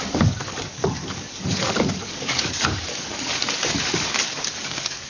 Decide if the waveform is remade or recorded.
remade